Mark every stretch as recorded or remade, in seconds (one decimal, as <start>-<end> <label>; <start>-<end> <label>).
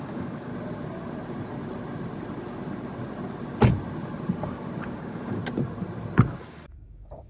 0.0-0.5 remade; 0.5-4.9 recorded; 4.9-5.4 remade; 5.4-6.4 recorded; 6.4-7.3 remade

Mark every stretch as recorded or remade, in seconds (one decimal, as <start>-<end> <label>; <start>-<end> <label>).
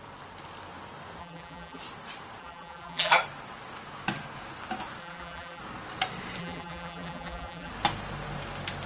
0.0-1.2 recorded; 1.2-1.8 remade; 1.8-2.4 recorded; 2.4-3.2 remade; 3.2-5.0 recorded; 5.0-5.6 remade; 5.6-6.4 recorded; 6.4-7.7 remade; 7.7-8.9 recorded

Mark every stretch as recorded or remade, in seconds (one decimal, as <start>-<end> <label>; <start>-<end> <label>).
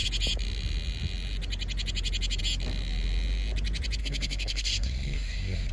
0.0-4.0 recorded; 4.0-5.7 remade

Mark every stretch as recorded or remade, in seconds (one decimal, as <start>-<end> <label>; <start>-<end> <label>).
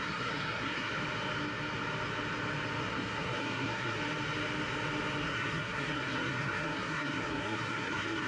0.0-0.9 remade; 0.9-2.8 recorded; 2.8-4.0 remade; 4.0-5.2 recorded; 5.2-8.3 remade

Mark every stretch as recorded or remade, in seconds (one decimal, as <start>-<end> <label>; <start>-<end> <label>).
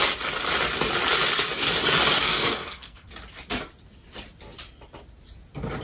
0.0-2.2 recorded; 2.2-3.1 remade; 3.1-5.8 recorded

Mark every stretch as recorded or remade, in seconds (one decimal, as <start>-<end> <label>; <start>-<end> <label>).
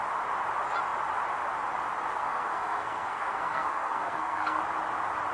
0.0-2.1 recorded; 2.1-4.6 remade; 4.6-5.3 recorded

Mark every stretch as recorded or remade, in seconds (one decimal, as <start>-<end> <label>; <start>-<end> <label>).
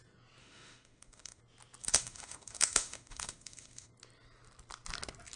0.0-0.4 recorded; 0.4-1.4 remade; 1.4-1.8 recorded; 1.8-3.9 remade; 3.9-5.4 recorded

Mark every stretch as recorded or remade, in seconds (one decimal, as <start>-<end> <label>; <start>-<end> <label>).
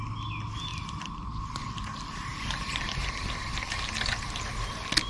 0.0-5.1 recorded